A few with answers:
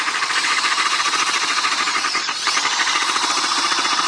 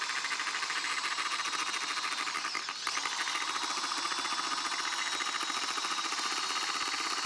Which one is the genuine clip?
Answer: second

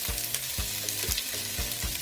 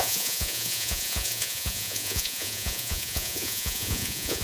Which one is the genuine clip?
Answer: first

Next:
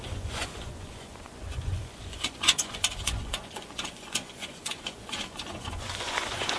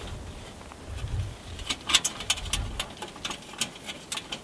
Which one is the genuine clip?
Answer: second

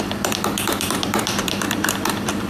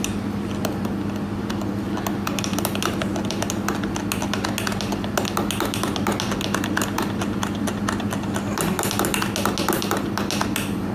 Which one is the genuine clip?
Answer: second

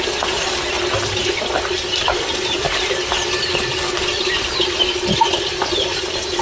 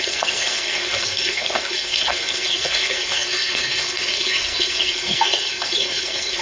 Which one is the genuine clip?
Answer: first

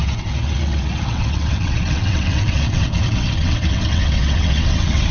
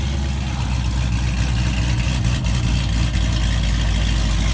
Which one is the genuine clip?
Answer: second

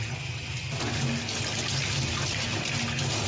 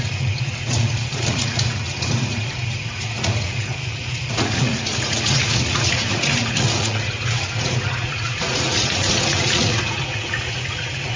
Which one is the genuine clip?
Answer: first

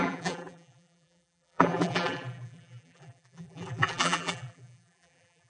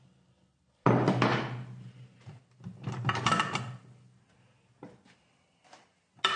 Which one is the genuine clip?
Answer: second